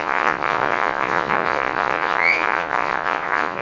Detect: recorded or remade remade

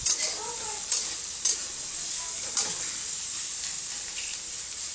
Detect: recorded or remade recorded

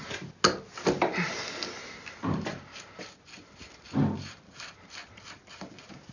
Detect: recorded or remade recorded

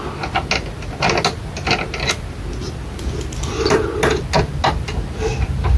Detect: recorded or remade recorded